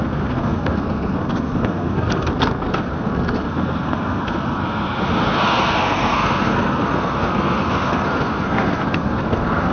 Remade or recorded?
remade